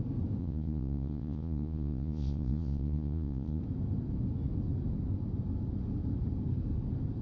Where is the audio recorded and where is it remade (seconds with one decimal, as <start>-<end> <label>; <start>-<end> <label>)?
0.0-0.4 recorded; 0.4-3.6 remade; 3.6-7.2 recorded